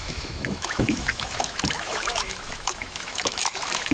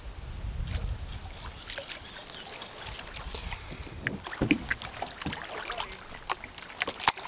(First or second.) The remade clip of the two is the first